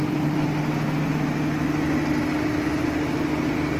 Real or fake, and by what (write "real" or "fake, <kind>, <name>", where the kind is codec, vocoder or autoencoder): real